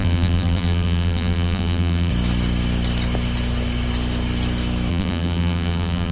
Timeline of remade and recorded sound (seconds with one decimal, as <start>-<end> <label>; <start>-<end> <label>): 0.0-2.1 remade; 2.1-4.9 recorded; 4.9-6.1 remade